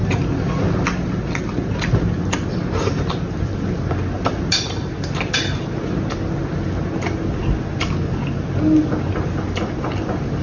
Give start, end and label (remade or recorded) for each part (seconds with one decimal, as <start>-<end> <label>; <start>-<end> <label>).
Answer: 0.0-10.4 recorded